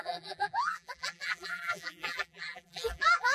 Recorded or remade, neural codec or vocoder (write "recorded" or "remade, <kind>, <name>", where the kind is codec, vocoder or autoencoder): remade, vocoder, BigVGAN v2